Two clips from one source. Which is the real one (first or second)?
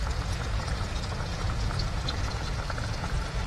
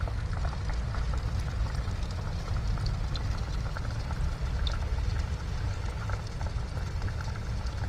second